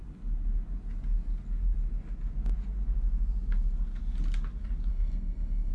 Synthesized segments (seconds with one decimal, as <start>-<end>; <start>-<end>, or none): 4.9-5.7